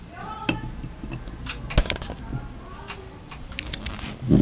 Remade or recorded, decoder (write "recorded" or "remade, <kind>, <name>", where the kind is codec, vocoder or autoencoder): recorded